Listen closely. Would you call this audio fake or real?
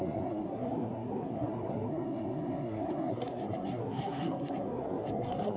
fake